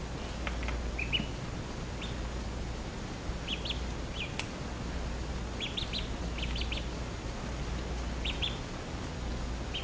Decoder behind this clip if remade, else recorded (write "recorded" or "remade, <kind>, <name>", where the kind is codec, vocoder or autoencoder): recorded